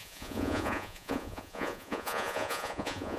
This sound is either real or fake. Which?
fake